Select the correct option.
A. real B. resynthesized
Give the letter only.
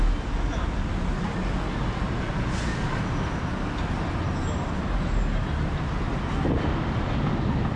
A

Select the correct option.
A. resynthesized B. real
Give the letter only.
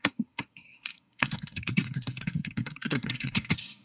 A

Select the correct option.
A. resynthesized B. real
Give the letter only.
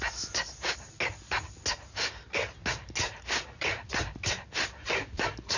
B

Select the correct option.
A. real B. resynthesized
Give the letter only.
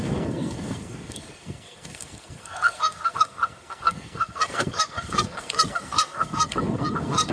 B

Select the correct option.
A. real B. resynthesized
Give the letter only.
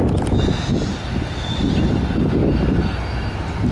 A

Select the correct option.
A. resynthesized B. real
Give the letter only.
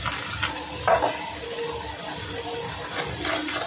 B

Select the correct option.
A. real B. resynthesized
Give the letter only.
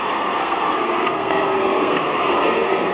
B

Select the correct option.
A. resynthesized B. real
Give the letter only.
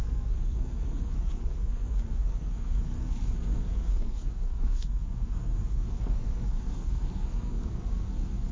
A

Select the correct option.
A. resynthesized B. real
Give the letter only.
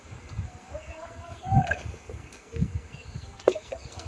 A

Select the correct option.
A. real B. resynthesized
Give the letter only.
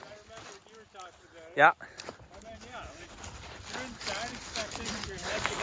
A